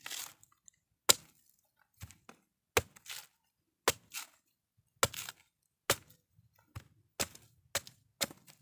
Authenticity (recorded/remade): recorded